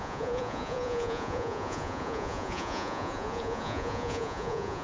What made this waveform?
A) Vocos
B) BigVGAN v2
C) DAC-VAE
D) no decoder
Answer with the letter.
A